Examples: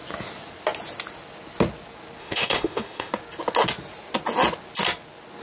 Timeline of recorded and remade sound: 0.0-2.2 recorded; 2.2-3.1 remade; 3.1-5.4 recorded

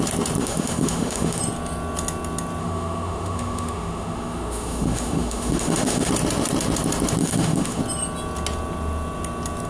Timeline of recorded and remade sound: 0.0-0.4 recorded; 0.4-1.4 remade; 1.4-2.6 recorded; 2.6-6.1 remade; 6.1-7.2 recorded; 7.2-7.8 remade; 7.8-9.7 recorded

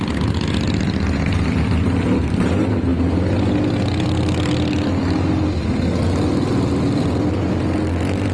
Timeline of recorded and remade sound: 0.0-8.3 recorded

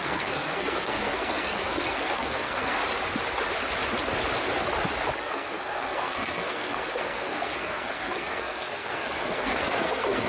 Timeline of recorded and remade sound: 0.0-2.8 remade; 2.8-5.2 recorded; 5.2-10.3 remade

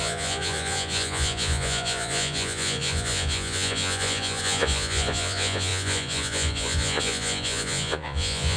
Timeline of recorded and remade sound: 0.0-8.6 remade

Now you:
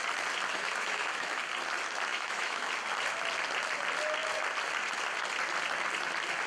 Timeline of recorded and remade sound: 0.0-0.5 recorded; 0.5-1.4 remade; 1.4-2.1 recorded; 2.1-2.7 remade; 2.7-6.5 recorded

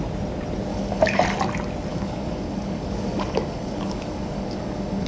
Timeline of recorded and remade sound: 0.0-0.7 recorded; 0.7-1.2 remade; 1.2-1.9 recorded; 1.9-5.1 remade

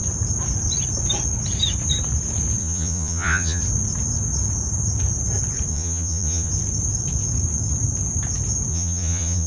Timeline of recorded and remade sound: 0.0-2.6 recorded; 2.6-3.6 remade; 3.6-5.7 recorded; 5.7-6.5 remade; 6.5-8.7 recorded; 8.7-9.5 remade